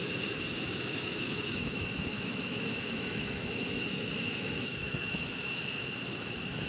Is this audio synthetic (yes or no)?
yes